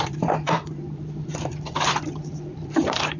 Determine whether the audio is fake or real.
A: fake